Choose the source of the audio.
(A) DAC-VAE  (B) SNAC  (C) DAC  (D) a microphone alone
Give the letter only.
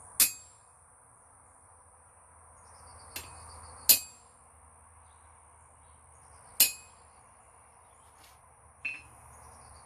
D